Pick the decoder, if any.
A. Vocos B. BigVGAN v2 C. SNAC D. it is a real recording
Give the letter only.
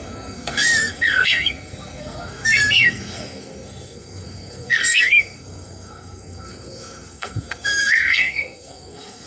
C